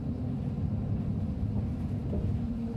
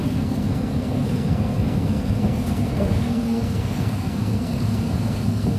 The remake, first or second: second